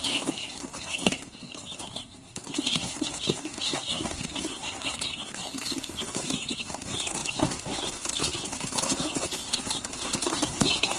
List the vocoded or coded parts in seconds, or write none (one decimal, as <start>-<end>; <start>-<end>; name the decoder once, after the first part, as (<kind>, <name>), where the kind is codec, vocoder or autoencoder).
0.0-11.0 (codec, SNAC)